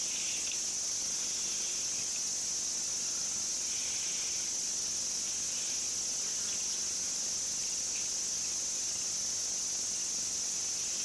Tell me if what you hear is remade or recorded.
recorded